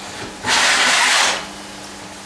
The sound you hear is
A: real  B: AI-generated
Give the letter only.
A